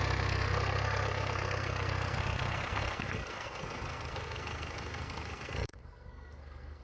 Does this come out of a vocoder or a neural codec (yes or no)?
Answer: yes